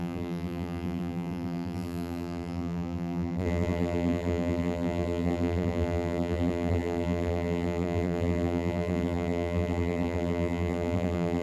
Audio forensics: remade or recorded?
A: remade